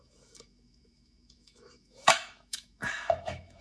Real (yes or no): no